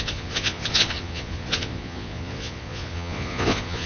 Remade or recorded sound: remade